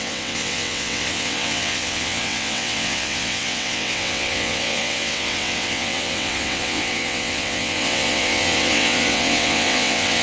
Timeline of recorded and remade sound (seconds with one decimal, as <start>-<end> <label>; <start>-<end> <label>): 0.0-10.2 remade